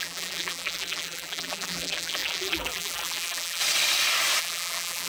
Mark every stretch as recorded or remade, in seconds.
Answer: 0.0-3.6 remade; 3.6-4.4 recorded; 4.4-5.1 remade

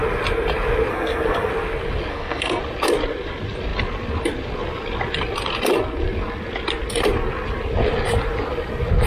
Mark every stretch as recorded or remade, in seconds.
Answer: 0.0-0.9 recorded; 0.9-1.5 remade; 1.5-2.1 recorded; 2.1-2.6 remade; 2.6-9.1 recorded